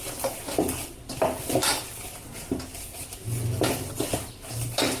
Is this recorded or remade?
recorded